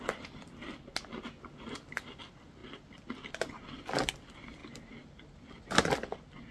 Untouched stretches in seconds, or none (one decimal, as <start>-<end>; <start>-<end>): 0.0-6.5